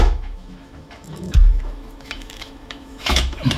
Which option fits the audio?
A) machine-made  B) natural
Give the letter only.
A